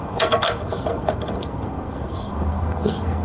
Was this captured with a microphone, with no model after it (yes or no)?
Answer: no